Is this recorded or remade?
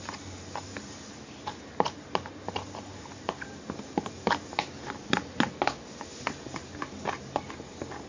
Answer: recorded